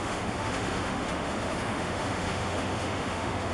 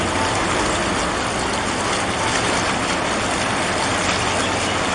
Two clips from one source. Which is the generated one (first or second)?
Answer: first